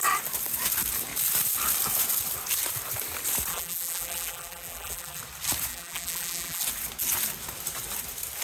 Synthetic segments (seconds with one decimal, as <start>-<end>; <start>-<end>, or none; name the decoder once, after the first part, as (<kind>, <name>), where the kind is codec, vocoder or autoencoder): 3.5-5.2 (vocoder, BigVGAN v2); 5.7-6.6